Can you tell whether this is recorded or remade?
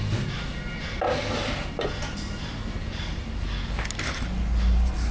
recorded